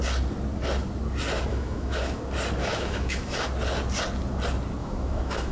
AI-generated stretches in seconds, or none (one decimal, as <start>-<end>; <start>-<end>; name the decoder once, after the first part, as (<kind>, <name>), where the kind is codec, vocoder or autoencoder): 1.5-2.2 (autoencoder, DAC-VAE); 2.6-3.5; 4.8-5.5